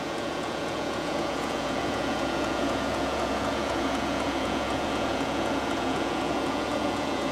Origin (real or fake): fake